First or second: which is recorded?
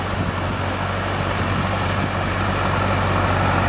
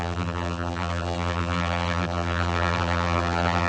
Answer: first